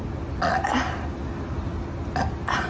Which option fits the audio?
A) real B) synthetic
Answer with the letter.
A